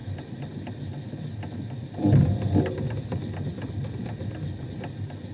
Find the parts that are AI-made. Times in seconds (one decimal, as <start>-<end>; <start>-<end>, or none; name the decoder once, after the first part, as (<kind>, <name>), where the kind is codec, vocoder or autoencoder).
none